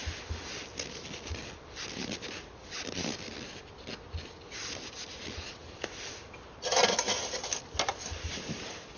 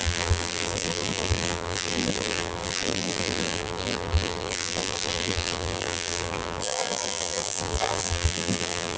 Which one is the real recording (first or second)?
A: first